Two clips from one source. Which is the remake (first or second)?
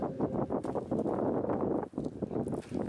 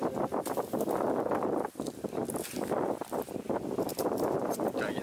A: second